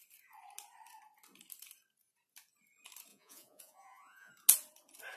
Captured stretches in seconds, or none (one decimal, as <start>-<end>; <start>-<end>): 0.0-3.1; 4.3-5.2